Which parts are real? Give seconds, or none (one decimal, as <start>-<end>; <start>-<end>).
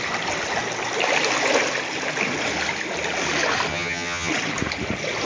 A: 0.0-3.7; 4.3-5.3